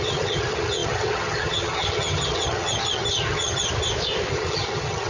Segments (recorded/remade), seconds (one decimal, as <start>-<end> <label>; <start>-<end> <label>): 0.0-3.7 remade; 3.7-4.3 recorded; 4.3-5.1 remade